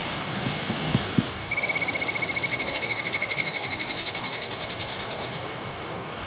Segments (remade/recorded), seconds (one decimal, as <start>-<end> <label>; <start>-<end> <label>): 0.0-1.5 remade; 1.5-2.5 recorded; 2.5-6.3 remade